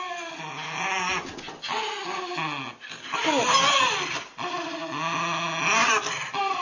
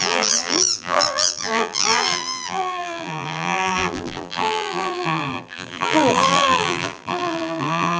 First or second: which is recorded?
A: first